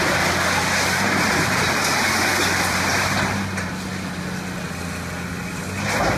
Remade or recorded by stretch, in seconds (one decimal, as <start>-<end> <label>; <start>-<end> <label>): 0.0-6.2 recorded